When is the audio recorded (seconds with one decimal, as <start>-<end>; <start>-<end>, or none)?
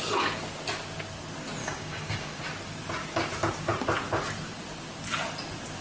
0.0-1.6; 2.4-5.8